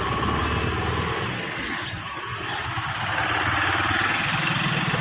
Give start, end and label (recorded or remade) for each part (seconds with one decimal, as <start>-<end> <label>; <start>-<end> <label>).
0.0-5.0 recorded

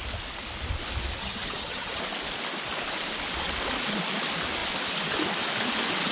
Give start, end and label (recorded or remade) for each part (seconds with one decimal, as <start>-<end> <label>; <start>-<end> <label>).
0.0-1.2 recorded; 1.2-2.0 remade; 2.0-6.1 recorded

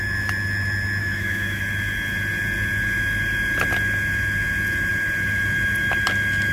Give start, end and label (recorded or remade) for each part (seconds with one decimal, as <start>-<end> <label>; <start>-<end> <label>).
0.0-1.0 recorded; 1.0-1.6 remade; 1.6-6.5 recorded

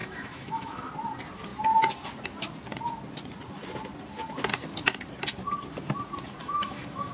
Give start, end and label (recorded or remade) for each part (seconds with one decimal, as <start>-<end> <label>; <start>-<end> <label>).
0.0-0.9 remade; 0.9-6.4 recorded; 6.4-7.1 remade